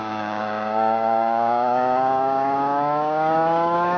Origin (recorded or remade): remade